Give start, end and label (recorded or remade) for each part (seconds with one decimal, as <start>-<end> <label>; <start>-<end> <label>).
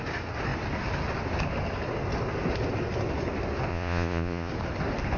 0.0-3.7 recorded; 3.7-4.5 remade; 4.5-5.2 recorded